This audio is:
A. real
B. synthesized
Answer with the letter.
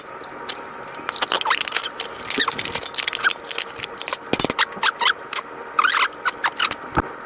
A